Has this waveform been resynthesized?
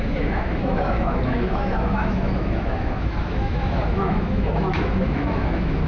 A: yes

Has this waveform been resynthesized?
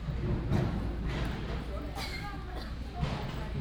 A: no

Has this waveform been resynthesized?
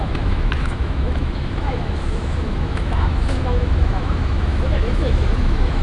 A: yes